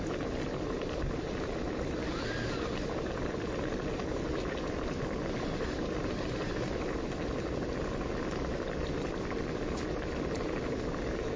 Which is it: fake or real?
real